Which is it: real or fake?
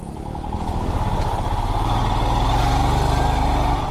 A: real